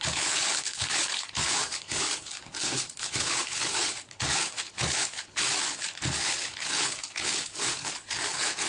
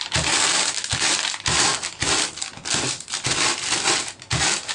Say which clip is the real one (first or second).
second